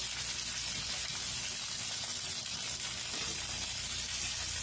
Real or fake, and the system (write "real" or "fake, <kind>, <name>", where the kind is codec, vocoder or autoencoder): real